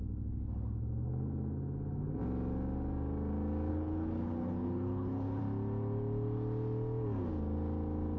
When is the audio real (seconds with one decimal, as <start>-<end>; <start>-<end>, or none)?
0.0-3.7; 5.4-8.2